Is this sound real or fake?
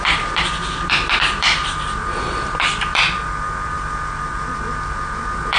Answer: fake